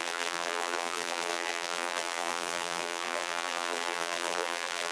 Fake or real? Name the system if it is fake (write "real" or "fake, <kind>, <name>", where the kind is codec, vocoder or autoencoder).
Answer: fake, vocoder, BigVGAN v2